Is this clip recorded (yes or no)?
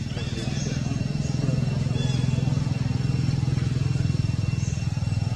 yes